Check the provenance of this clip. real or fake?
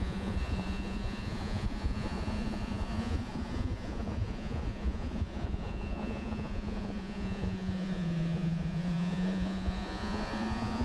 fake